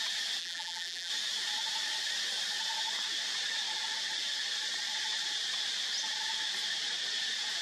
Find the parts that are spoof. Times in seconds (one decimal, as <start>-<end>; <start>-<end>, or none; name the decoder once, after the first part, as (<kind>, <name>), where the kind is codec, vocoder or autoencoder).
0.4-1.1 (vocoder, BigVGAN v2)

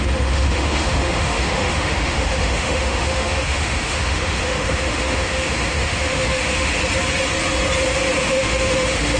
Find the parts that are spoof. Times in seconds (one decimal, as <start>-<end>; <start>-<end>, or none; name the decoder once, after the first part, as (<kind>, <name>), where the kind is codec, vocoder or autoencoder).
0.0-6.8 (autoencoder, DAC-VAE); 8.2-9.2